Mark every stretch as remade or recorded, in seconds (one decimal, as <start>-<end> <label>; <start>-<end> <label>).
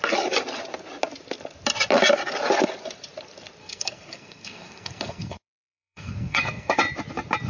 0.0-3.6 recorded; 3.6-6.8 remade; 6.8-7.5 recorded